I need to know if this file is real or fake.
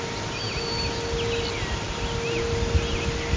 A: real